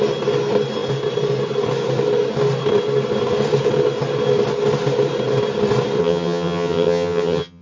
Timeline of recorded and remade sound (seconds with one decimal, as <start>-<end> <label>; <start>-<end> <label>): 0.0-6.0 recorded; 6.0-7.6 remade